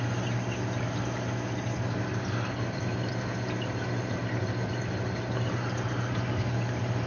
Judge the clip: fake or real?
real